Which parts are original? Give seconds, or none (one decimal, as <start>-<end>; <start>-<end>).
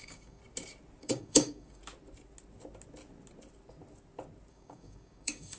0.4-1.0; 1.8-4.5